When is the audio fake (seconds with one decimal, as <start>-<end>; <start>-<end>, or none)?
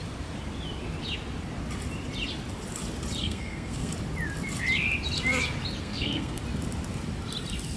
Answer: 3.2-3.9; 5.8-6.4